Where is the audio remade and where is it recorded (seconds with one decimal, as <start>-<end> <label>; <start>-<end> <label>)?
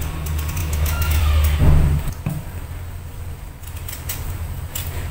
0.0-0.6 recorded; 0.6-1.2 remade; 1.2-5.1 recorded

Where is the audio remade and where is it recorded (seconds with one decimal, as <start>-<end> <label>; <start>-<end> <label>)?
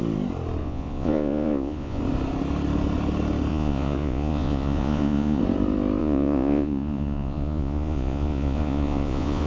0.0-0.6 recorded; 0.6-2.0 remade; 2.0-3.5 recorded; 3.5-5.4 remade; 5.4-6.0 recorded; 6.0-9.5 remade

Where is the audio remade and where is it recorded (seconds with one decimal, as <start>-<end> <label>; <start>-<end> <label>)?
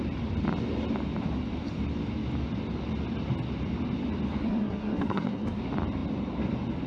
0.0-4.4 recorded; 4.4-5.6 remade; 5.6-6.9 recorded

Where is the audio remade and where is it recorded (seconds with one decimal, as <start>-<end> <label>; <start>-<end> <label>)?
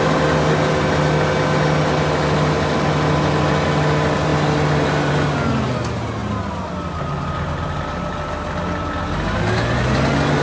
0.0-10.4 recorded